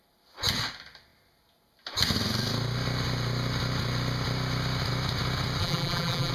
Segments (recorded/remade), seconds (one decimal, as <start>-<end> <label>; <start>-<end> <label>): 0.0-5.6 recorded; 5.6-6.3 remade